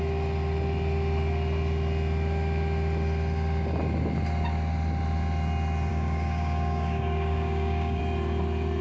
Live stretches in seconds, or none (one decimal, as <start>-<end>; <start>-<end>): 0.0-5.9; 8.0-8.8